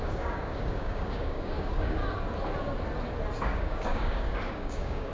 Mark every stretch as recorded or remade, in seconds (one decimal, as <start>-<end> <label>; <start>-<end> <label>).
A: 0.0-2.0 remade; 2.0-3.4 recorded; 3.4-5.1 remade